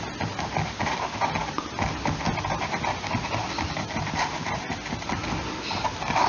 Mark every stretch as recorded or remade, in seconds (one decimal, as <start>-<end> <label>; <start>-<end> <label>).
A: 0.0-6.3 recorded